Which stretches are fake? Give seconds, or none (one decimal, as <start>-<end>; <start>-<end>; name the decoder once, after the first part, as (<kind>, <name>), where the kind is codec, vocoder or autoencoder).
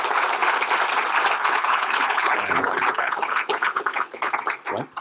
1.4-4.4 (codec, HILCodec)